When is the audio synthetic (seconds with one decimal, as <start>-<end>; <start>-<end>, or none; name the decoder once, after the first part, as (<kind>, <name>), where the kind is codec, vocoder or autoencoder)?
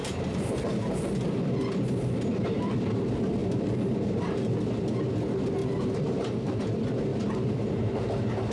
0.0-1.1 (vocoder, BigVGAN v2); 3.4-4.5; 5.6-6.6; 7.1-8.5